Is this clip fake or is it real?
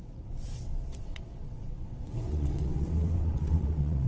fake